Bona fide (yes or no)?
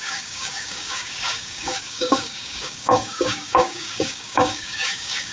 no